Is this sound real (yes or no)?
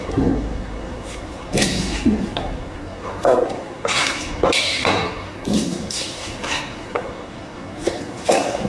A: no